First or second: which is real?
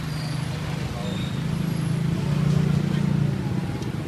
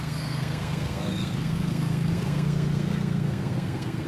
first